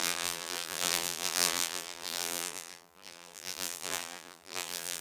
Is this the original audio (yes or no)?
no